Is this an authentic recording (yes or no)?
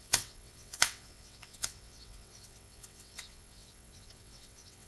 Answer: no